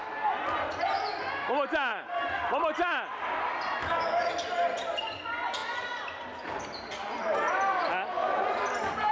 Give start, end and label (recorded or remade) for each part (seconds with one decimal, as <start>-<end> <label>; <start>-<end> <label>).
0.0-3.8 recorded; 3.8-4.3 remade; 4.3-9.1 recorded